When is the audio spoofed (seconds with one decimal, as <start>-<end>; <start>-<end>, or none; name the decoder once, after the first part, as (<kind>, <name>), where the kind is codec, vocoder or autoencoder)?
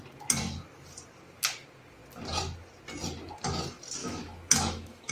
4.0-5.1 (autoencoder, DAC-VAE)